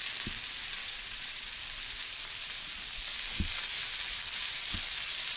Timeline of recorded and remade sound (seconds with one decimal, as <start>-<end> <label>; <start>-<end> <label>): 0.0-0.8 recorded; 0.8-1.5 remade; 1.5-5.4 recorded